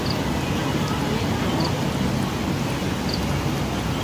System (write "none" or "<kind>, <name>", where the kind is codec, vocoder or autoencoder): none